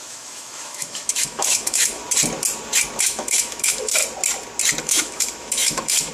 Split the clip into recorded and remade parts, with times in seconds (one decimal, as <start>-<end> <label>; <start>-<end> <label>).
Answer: 0.0-2.0 remade; 2.0-3.0 recorded; 3.0-4.0 remade; 4.0-4.8 recorded; 4.8-6.1 remade